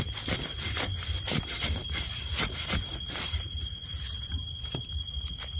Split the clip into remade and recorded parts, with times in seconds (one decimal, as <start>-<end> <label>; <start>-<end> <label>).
0.0-5.6 recorded

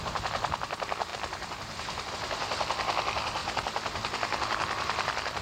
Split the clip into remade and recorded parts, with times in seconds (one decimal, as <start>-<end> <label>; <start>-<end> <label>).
0.0-5.4 recorded